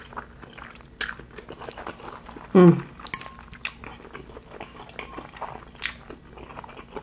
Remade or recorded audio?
recorded